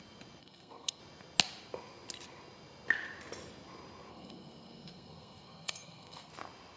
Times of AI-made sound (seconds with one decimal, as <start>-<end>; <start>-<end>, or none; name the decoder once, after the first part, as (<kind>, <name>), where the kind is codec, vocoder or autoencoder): 0.4-1.0 (codec, SNAC); 4.1-6.3